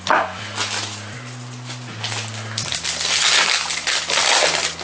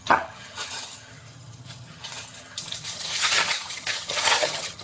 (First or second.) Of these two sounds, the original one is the first